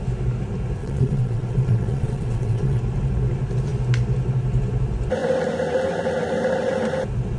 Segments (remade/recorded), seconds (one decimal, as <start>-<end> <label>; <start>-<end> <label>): 0.0-0.8 recorded; 0.8-2.8 remade; 2.8-7.4 recorded

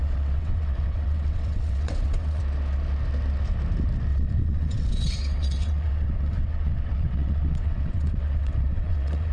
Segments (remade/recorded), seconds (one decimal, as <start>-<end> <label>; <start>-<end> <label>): 0.0-2.4 remade; 2.4-4.1 recorded; 4.1-9.3 remade

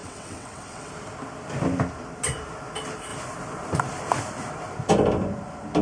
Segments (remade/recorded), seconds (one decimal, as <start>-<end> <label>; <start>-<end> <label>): 0.0-0.9 remade; 0.9-5.8 recorded